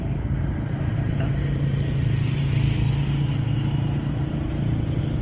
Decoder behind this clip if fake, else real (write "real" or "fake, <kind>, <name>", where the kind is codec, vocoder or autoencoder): real